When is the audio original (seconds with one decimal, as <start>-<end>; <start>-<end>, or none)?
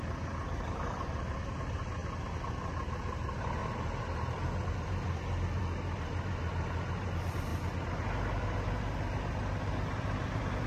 2.0-2.7; 7.5-8.8